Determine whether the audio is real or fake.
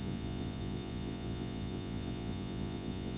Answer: fake